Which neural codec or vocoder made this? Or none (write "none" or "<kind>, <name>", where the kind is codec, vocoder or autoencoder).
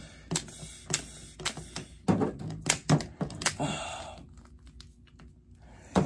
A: none